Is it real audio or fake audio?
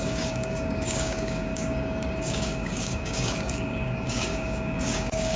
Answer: fake